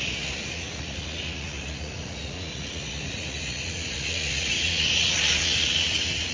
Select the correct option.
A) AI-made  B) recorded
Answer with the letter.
A